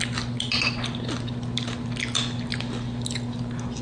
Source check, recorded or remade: recorded